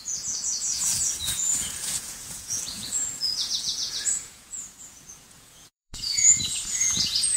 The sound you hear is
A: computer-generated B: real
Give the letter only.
A